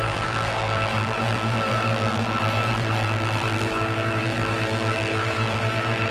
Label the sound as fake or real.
fake